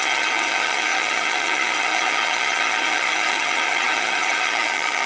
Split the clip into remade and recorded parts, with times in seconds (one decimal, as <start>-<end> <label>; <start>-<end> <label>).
0.0-5.1 remade